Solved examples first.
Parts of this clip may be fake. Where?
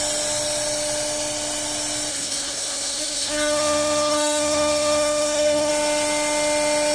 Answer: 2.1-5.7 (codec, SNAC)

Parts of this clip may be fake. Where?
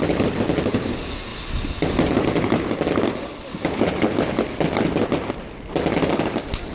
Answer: none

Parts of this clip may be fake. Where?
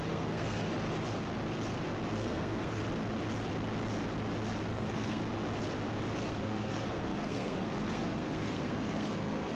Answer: 0.0-0.7 (codec, SNAC); 2.1-2.8; 4.7-5.2; 6.3-9.6